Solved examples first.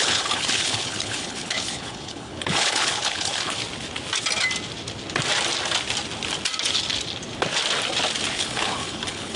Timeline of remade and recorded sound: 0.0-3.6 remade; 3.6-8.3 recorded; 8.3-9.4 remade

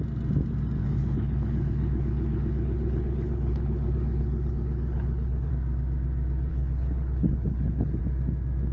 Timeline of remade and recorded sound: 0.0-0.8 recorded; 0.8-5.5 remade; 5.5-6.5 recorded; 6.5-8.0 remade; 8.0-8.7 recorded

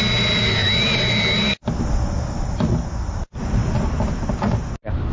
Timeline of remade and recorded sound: 0.0-5.1 recorded